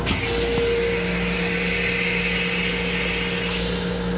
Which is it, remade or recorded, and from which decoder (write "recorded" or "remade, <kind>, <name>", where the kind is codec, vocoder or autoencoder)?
recorded